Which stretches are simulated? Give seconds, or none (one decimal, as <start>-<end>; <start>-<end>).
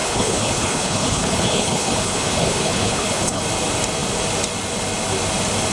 0.0-3.4